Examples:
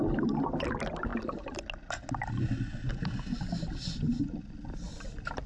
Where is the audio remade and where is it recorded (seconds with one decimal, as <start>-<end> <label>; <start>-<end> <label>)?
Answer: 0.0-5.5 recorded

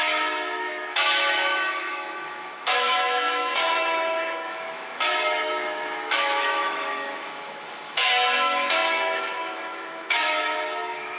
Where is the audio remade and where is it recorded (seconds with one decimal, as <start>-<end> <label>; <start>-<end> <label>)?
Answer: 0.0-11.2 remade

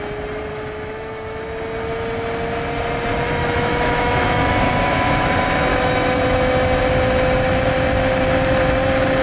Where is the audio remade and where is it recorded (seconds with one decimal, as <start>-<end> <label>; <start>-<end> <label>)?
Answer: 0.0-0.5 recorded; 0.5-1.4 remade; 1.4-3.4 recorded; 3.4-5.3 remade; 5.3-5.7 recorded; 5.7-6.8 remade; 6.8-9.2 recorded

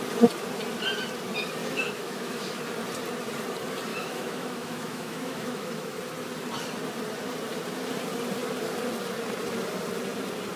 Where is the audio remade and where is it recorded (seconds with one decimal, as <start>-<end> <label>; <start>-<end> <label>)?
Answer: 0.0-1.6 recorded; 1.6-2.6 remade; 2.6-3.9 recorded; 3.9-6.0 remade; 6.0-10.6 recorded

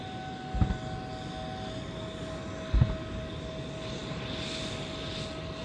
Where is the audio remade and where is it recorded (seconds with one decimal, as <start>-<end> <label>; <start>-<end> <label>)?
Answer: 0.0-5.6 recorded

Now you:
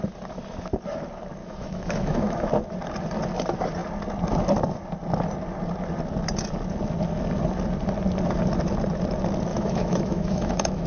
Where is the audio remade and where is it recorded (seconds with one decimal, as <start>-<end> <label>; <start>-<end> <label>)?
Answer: 0.0-1.4 recorded; 1.4-2.5 remade; 2.5-9.5 recorded; 9.5-10.9 remade

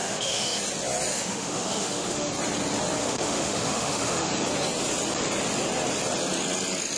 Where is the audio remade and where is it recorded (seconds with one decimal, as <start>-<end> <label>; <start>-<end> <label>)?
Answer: 0.0-0.6 remade; 0.6-1.1 recorded; 1.1-2.3 remade; 2.3-3.0 recorded; 3.0-4.3 remade; 4.3-7.0 recorded